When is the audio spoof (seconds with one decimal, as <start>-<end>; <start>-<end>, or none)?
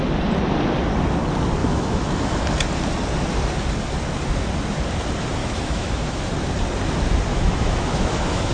1.6-2.4; 5.4-6.3; 7.3-8.5